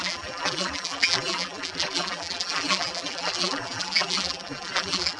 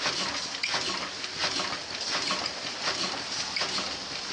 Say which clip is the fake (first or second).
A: first